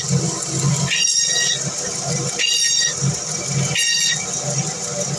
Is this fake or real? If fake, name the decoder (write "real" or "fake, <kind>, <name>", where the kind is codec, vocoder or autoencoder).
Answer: real